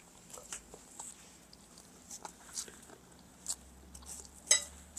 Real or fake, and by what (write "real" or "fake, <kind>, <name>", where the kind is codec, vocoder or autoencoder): real